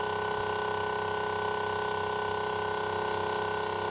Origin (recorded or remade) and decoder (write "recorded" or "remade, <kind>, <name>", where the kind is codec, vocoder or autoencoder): recorded